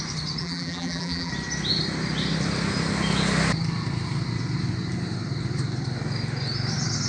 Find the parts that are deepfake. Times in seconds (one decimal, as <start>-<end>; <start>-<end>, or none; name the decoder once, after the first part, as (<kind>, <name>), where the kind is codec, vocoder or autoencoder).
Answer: 0.4-1.3 (vocoder, BigVGAN v2)

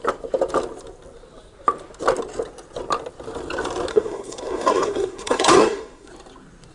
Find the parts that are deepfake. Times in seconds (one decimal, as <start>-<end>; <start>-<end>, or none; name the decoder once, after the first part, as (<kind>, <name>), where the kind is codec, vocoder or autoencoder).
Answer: 3.9-6.1 (codec, SNAC)